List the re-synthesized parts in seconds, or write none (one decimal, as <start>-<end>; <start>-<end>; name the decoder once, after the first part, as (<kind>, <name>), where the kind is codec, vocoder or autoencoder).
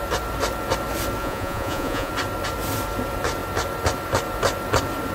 1.2-2.1 (vocoder, Vocos)